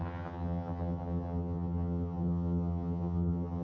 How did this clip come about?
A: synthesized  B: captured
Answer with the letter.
A